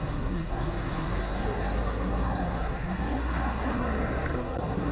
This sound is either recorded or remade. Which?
remade